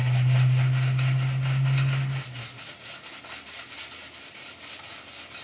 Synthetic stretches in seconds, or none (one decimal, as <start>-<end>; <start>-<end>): none